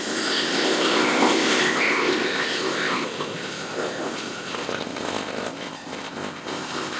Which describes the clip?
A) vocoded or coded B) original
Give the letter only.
A